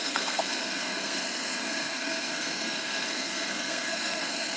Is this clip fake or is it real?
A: fake